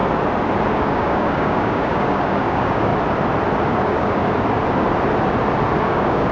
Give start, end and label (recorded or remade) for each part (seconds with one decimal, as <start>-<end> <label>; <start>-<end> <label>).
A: 0.0-0.7 recorded; 0.7-2.9 remade; 2.9-3.7 recorded; 3.7-4.2 remade; 4.2-5.8 recorded; 5.8-6.3 remade